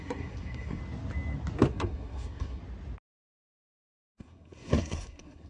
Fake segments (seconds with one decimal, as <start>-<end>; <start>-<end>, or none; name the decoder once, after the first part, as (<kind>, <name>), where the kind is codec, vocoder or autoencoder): 0.0-0.8 (codec, SNAC); 1.7-2.6; 3.5-5.5